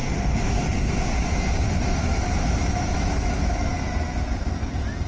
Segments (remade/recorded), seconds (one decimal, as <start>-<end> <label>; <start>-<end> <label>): 0.0-2.0 recorded; 2.0-3.5 remade; 3.5-5.1 recorded